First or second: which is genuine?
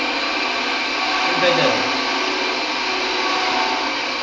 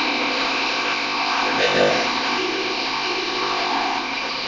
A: first